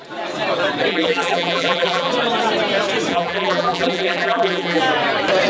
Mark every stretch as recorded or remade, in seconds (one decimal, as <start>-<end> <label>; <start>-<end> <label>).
0.0-0.9 recorded; 0.9-2.1 remade; 2.1-3.1 recorded; 3.1-4.8 remade; 4.8-5.5 recorded